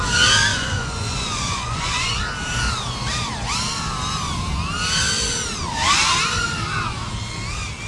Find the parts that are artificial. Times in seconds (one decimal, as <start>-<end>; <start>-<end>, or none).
0.5-2.2

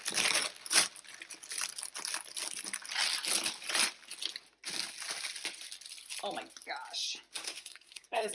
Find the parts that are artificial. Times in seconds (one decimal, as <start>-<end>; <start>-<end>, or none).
7.4-8.3